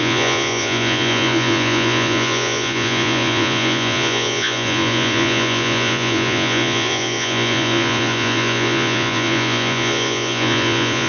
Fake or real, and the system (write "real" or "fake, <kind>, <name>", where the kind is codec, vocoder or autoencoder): fake, vocoder, Vocos